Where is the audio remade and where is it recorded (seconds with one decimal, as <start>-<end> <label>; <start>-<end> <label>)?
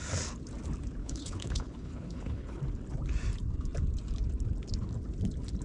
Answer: 0.0-1.0 recorded; 1.0-2.6 remade; 2.6-5.6 recorded